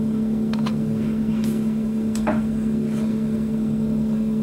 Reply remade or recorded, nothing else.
remade